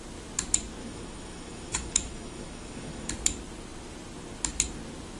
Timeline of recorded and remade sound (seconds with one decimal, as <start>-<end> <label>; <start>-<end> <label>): 0.0-0.8 recorded; 0.8-3.1 remade; 3.1-5.2 recorded